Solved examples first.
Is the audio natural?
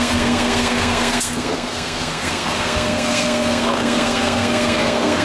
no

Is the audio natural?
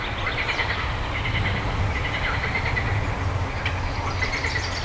yes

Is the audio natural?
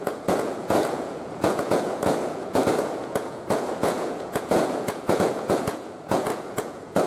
no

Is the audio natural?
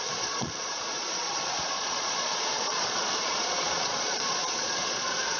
no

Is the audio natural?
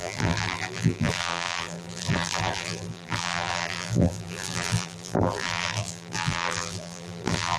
no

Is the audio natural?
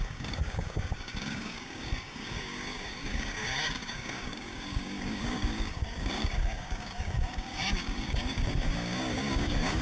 no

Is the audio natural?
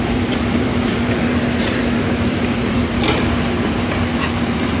no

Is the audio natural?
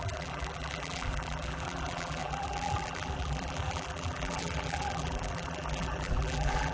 no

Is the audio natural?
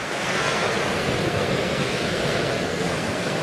no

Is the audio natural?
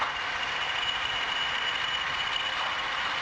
yes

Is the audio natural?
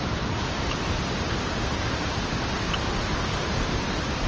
no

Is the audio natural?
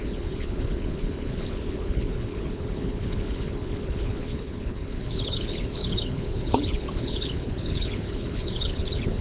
no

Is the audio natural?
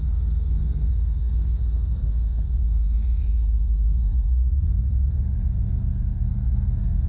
no